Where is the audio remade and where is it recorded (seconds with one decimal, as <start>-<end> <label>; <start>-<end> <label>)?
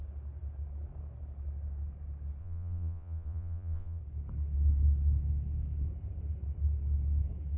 0.0-2.4 recorded; 2.4-4.0 remade; 4.0-7.6 recorded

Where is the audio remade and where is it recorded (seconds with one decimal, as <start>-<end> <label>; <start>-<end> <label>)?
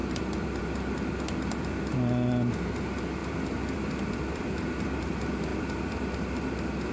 0.0-0.6 remade; 0.6-3.2 recorded; 3.2-5.1 remade; 5.1-5.5 recorded; 5.5-6.9 remade